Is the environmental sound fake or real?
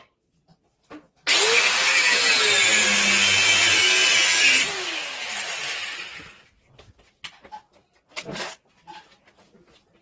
real